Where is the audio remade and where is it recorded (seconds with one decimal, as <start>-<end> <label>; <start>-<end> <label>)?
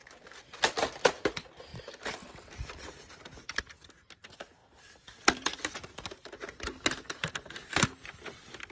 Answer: 0.0-1.7 recorded; 1.7-3.6 remade; 3.6-4.6 recorded; 4.6-5.6 remade; 5.6-8.7 recorded